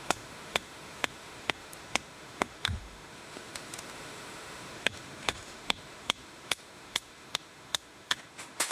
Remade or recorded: remade